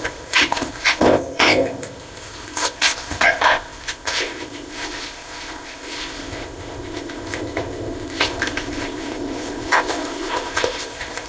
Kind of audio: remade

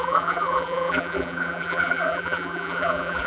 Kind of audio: remade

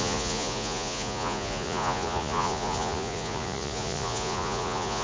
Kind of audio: remade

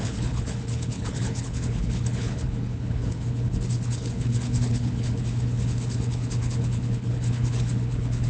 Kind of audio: remade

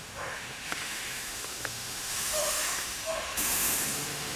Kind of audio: remade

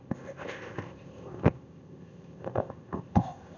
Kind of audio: remade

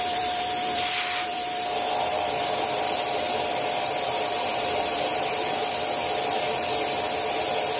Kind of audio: remade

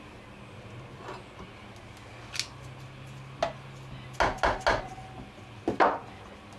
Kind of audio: recorded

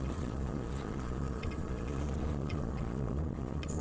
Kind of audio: remade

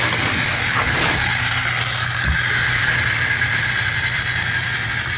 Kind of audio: recorded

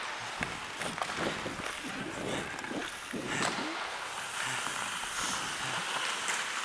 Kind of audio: recorded